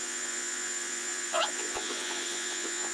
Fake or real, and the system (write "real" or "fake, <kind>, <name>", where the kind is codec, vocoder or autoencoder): fake, vocoder, Vocos